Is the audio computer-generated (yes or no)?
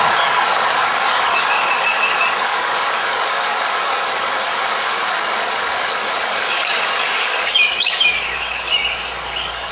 yes